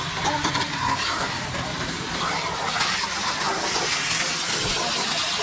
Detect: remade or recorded recorded